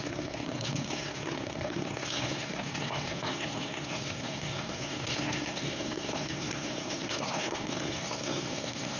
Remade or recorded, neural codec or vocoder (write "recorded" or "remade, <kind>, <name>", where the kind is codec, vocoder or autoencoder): remade, codec, SNAC